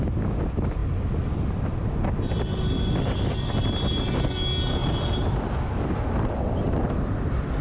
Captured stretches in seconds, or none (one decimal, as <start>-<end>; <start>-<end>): 0.0-0.8; 4.1-4.8